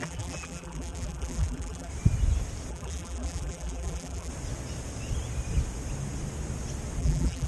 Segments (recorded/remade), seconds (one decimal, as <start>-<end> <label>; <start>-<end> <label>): 0.0-1.9 remade; 1.9-2.7 recorded; 2.7-4.3 remade; 4.3-7.0 recorded; 7.0-7.5 remade